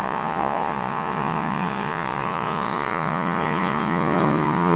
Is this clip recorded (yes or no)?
no